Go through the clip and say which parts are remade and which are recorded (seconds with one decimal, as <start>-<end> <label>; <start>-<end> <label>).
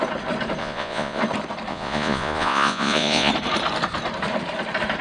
0.0-0.6 recorded; 0.6-1.2 remade; 1.2-1.7 recorded; 1.7-3.3 remade; 3.3-5.0 recorded